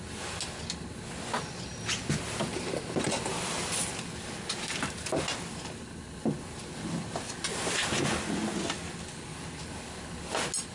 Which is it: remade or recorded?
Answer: recorded